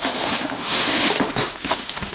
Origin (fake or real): fake